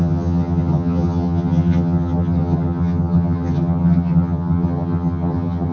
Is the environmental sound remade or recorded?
remade